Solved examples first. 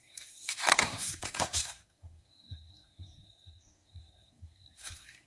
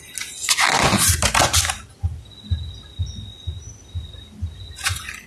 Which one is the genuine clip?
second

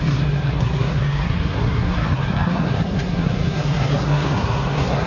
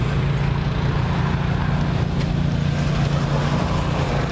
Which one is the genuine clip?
second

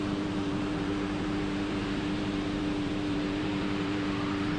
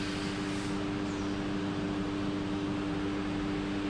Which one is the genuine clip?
second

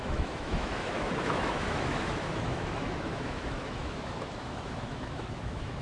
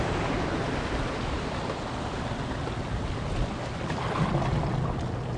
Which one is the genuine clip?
second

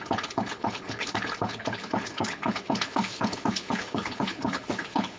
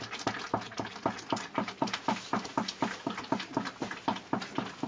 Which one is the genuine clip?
second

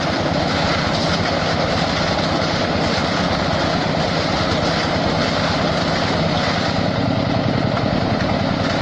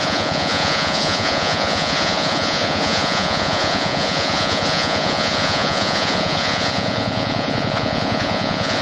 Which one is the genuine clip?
first